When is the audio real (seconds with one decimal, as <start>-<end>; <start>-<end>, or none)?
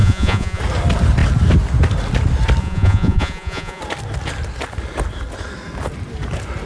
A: 0.6-2.6; 3.8-6.7